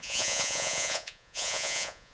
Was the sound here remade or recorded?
remade